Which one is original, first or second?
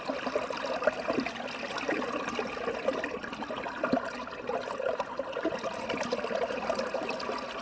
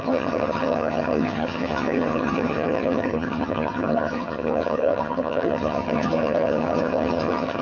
first